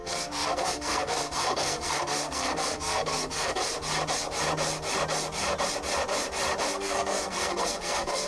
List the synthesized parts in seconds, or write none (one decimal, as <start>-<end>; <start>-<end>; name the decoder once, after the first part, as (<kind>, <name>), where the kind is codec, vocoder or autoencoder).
0.0-3.6 (codec, SNAC); 6.7-8.3